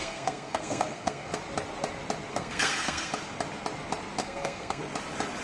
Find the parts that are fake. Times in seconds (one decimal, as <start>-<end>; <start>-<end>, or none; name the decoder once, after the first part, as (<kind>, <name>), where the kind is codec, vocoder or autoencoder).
0.0-1.4 (codec, SNAC); 2.3-3.1; 4.2-4.8